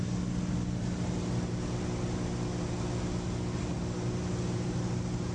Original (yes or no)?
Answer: yes